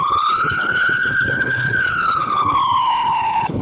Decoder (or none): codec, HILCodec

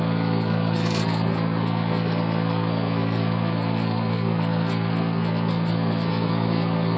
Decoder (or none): codec, SNAC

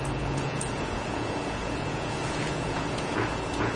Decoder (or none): vocoder, Vocos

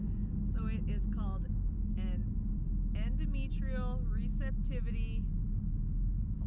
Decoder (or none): none